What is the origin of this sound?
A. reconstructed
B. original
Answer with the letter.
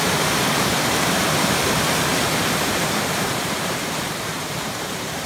A